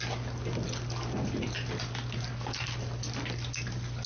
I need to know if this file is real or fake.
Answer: real